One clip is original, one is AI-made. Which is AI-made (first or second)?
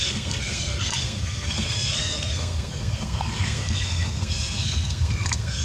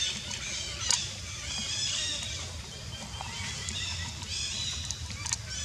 first